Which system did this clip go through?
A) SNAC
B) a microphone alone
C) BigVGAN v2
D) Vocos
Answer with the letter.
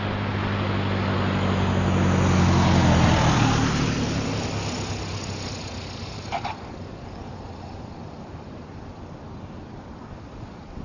B